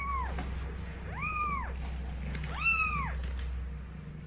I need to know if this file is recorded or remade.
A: recorded